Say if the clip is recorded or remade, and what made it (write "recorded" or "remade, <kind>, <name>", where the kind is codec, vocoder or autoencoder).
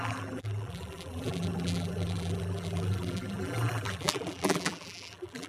remade, vocoder, BigVGAN v2